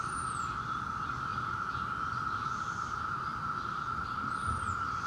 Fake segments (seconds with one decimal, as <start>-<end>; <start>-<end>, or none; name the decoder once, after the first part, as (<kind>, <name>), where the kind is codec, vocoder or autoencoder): 1.3-2.5 (vocoder, BigVGAN v2)